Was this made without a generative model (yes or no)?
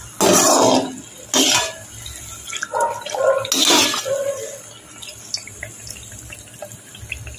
yes